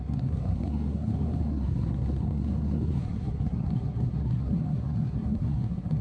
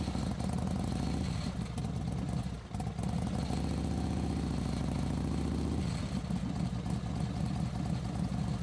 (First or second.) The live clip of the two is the second